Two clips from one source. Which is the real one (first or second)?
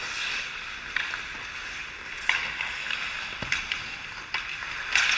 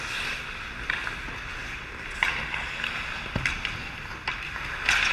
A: second